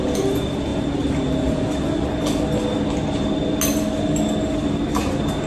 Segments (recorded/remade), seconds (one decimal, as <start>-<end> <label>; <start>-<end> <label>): 0.0-5.5 recorded